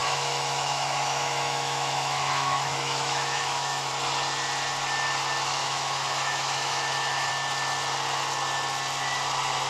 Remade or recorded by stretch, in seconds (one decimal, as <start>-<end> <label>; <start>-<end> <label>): 0.0-3.9 remade; 3.9-5.6 recorded; 5.6-7.3 remade; 7.3-9.7 recorded